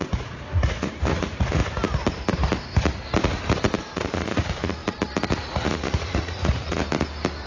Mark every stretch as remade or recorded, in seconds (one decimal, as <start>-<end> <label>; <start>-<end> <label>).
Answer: 0.0-1.6 remade; 1.6-3.8 recorded; 3.8-4.8 remade; 4.8-5.5 recorded; 5.5-6.8 remade; 6.8-7.5 recorded